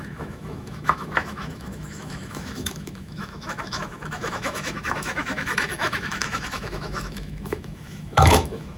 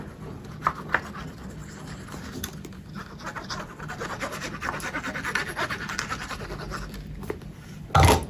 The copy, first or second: first